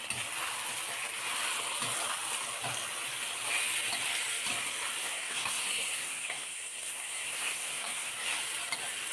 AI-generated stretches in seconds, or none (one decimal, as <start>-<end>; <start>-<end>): 5.0-8.1